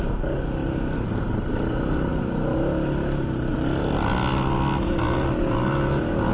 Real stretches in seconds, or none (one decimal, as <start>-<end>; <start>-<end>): 0.0-6.3